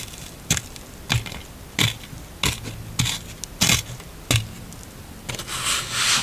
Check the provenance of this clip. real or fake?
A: real